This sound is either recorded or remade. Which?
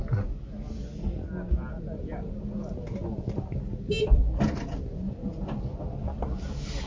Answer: recorded